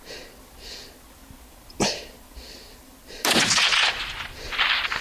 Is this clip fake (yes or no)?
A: no